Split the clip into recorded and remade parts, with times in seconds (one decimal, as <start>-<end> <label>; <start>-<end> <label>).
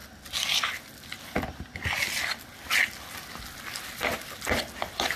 0.0-5.2 recorded